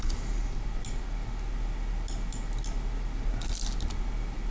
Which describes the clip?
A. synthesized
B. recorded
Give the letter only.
B